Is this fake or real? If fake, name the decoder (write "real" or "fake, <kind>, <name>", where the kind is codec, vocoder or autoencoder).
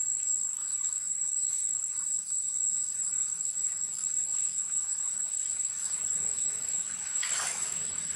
fake, codec, DAC